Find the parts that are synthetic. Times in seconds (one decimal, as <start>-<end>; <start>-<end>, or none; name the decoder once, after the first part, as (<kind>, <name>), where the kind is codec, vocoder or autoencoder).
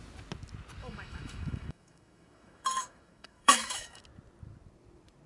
0.8-4.0 (autoencoder, DAC-VAE)